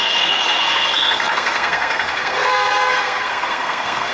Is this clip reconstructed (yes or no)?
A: yes